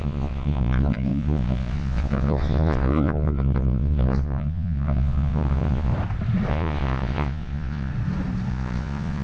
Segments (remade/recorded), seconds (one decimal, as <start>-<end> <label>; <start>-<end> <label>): 0.0-5.9 remade; 5.9-6.5 recorded; 6.5-7.9 remade; 7.9-8.5 recorded; 8.5-9.2 remade